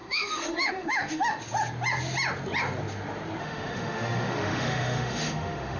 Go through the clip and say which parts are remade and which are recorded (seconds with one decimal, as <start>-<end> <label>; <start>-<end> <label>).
0.0-1.4 remade; 1.4-3.4 recorded; 3.4-5.8 remade